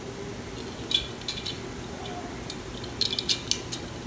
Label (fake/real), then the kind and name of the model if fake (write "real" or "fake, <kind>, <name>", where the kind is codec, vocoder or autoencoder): real